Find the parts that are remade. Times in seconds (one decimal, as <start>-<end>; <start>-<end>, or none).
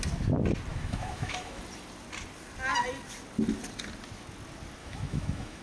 0.7-1.6; 4.8-5.6